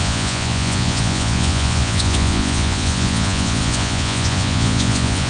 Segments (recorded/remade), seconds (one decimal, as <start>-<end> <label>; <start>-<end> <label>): 0.0-5.3 remade